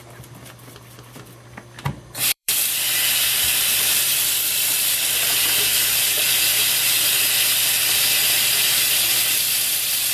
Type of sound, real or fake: fake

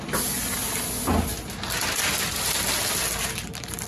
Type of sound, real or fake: real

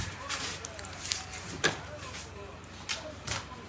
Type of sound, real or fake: fake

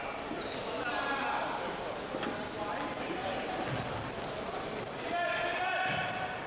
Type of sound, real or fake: real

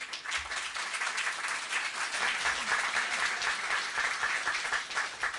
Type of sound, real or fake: real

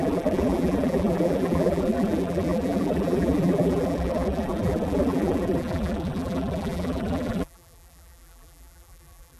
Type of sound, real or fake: fake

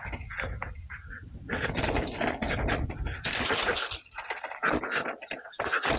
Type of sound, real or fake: real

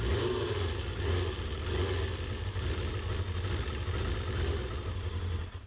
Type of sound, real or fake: real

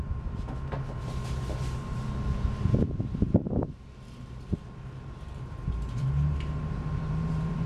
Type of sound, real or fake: fake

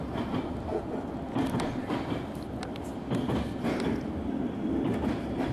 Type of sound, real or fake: real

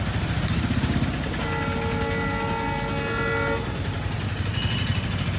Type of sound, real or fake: real